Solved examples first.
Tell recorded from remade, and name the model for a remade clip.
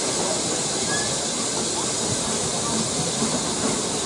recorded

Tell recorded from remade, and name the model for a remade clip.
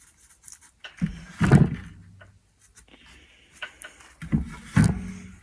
recorded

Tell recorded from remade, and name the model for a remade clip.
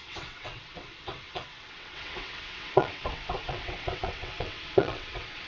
remade, vocoder, WaveNeXt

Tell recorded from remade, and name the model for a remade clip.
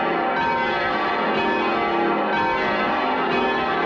recorded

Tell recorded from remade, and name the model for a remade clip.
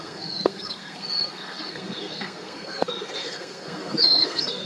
remade, codec, SNAC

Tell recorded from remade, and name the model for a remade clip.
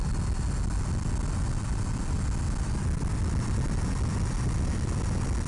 recorded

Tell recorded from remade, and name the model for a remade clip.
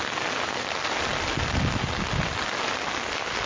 recorded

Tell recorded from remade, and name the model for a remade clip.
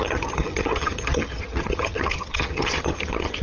remade, vocoder, HiFi-GAN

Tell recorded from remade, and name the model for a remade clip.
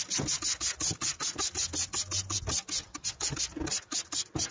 recorded